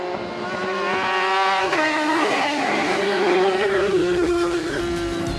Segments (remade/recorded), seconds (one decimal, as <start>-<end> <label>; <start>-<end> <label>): 0.0-1.6 recorded; 1.6-4.8 remade; 4.8-5.4 recorded